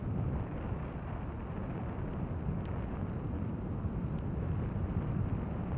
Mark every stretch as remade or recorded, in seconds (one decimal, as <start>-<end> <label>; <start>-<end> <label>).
0.0-5.8 recorded